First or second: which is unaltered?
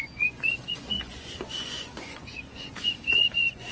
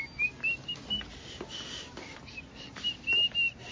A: second